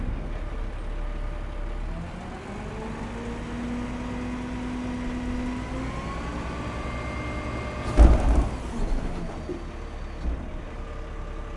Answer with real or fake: real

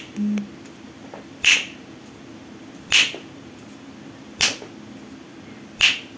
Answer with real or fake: real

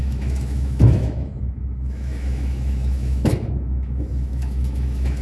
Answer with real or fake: fake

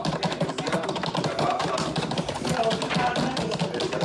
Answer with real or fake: real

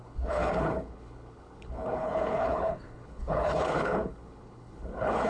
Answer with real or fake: fake